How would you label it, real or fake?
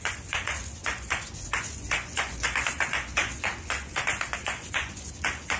fake